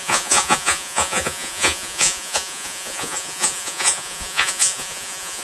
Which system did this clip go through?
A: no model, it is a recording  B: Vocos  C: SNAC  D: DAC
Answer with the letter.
B